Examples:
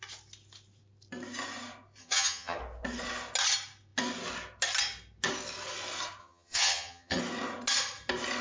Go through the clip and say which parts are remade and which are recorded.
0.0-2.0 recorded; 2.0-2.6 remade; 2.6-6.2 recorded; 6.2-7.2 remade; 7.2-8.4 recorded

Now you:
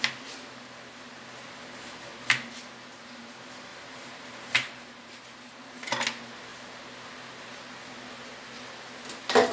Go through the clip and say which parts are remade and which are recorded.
0.0-3.7 recorded; 3.7-5.2 remade; 5.2-9.5 recorded